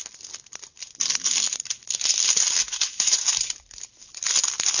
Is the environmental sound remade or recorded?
recorded